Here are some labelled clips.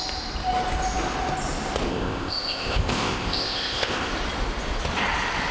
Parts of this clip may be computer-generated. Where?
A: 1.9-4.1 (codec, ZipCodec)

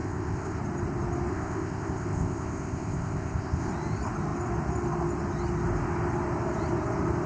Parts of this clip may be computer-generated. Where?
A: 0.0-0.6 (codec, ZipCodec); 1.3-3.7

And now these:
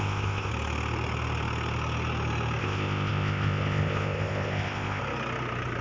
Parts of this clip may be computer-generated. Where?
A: 0.0-0.5 (codec, ZipCodec); 2.6-5.0